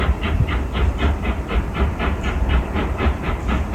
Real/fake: fake